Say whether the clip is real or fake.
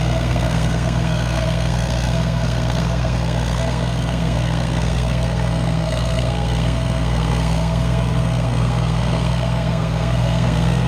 fake